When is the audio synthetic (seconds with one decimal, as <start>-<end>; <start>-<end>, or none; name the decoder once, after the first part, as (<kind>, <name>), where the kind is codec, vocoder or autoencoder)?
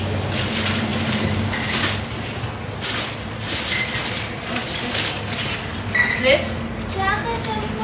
none